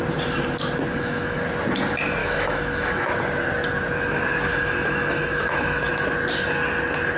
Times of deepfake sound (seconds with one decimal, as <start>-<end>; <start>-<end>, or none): 0.9-1.4; 2.2-3.1; 4.5-5.9